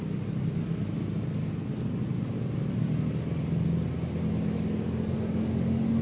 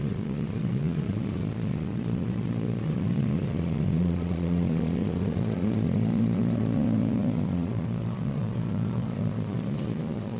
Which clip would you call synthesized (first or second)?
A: second